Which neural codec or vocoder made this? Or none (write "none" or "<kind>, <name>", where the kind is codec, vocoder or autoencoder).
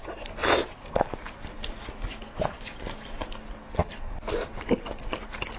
none